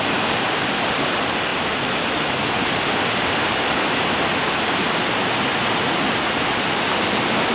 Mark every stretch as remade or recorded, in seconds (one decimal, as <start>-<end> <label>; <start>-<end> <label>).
0.0-7.5 recorded